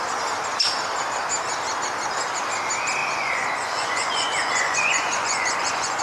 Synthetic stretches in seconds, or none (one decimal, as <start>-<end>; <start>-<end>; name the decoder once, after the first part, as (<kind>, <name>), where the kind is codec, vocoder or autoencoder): 3.0-6.0 (vocoder, Vocos)